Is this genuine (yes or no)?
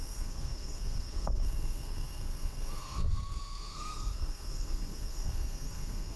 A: no